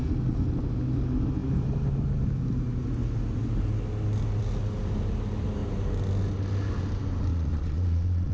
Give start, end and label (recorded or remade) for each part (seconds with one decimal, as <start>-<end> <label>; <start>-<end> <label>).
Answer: 0.0-7.3 recorded; 7.3-8.3 remade